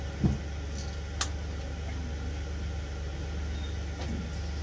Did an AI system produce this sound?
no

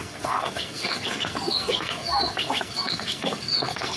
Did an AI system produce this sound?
yes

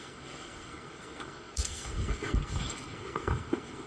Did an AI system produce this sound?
yes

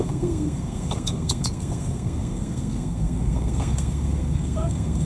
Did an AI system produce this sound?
yes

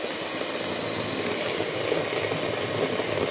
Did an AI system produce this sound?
no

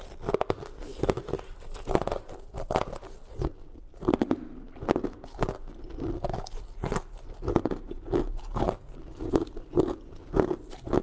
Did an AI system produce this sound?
no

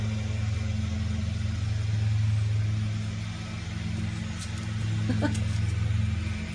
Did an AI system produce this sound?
no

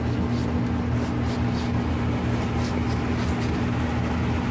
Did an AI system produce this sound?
no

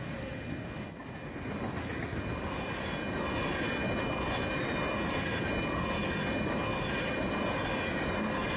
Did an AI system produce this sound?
no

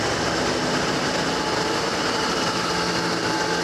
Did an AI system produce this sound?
no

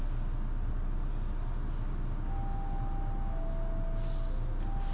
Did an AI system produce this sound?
no